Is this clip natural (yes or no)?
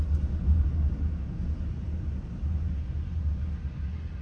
yes